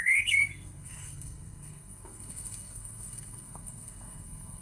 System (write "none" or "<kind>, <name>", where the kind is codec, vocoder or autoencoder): codec, SNAC